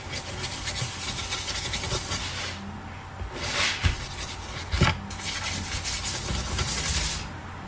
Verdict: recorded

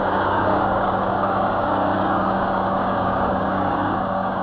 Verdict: remade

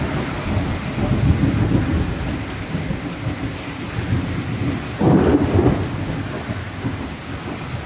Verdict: recorded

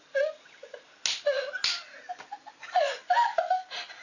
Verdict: recorded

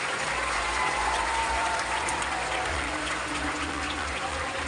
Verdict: remade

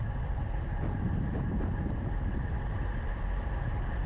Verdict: recorded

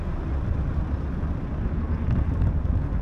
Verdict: recorded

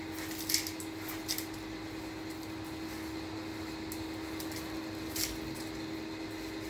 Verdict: recorded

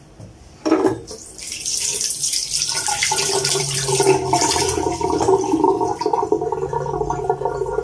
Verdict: remade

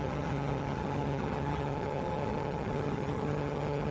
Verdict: remade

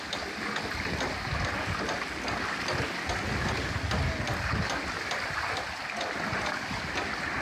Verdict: recorded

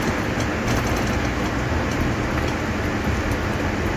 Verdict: recorded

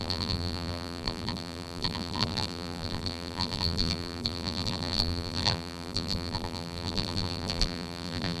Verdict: remade